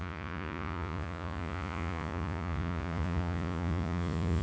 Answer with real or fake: fake